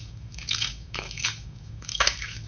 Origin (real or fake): fake